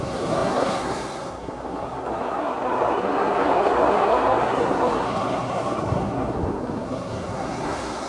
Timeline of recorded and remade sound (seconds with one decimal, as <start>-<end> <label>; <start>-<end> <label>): 0.0-8.1 remade